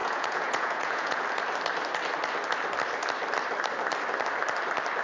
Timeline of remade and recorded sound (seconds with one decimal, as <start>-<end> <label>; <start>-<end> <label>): 0.0-1.2 remade; 1.2-5.0 recorded